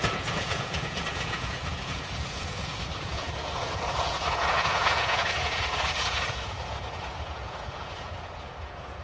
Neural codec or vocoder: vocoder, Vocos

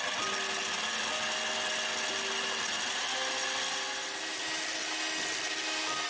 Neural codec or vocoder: none